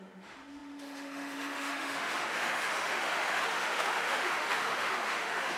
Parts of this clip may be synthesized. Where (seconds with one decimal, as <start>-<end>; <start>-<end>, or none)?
0.0-5.6